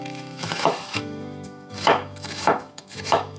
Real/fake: fake